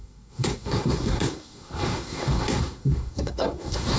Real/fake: fake